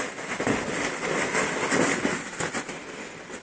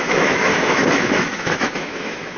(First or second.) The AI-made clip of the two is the second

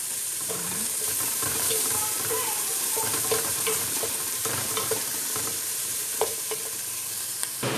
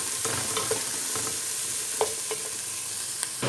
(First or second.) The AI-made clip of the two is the first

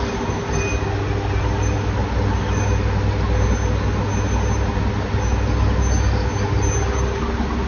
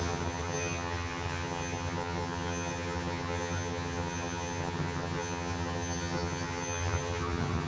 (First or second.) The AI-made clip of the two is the second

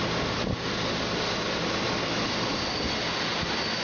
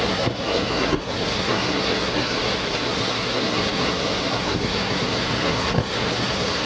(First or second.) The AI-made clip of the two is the second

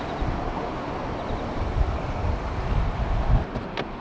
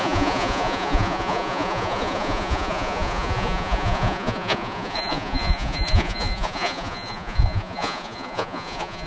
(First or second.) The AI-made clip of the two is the second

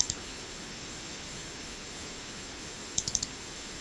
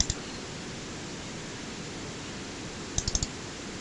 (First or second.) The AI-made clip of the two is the first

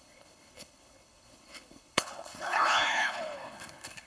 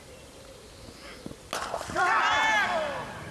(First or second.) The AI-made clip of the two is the first